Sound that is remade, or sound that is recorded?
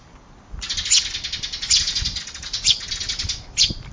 recorded